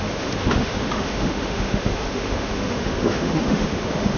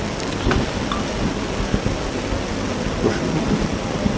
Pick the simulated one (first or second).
first